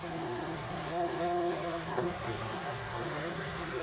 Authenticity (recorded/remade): remade